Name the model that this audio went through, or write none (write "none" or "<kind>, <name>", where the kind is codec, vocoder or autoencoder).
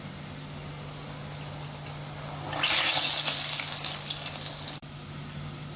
none